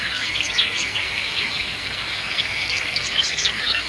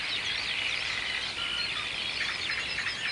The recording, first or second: second